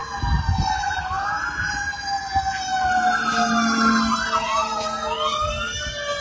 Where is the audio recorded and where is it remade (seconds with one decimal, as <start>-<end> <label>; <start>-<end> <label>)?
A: 0.0-6.2 recorded